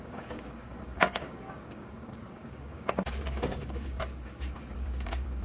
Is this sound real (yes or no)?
no